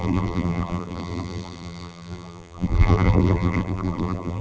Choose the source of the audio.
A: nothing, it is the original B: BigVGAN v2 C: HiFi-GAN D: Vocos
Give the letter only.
B